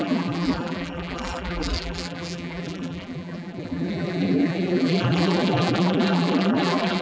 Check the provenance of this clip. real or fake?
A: fake